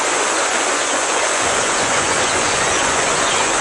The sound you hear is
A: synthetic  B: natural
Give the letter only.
A